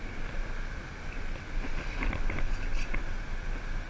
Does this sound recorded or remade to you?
recorded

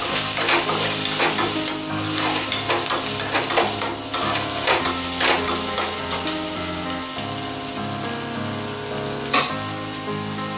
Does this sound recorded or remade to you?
recorded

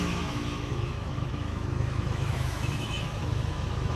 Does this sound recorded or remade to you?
remade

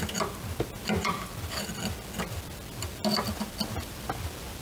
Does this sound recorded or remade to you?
recorded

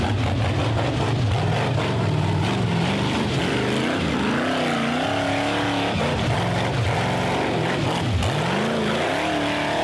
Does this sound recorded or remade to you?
recorded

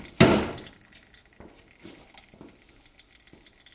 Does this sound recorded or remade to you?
recorded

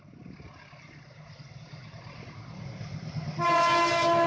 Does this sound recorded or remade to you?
recorded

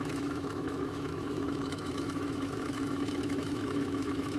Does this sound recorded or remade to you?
remade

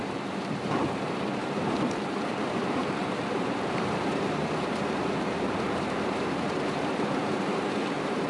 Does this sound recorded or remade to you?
remade